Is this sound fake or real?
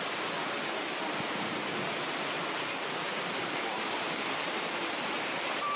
real